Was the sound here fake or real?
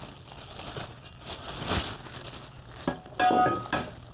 real